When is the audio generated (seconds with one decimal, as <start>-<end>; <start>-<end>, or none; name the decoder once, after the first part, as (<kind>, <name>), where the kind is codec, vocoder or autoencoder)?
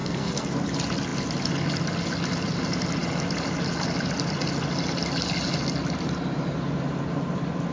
0.0-0.5 (codec, SNAC)